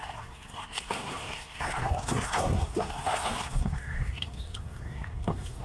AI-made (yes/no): yes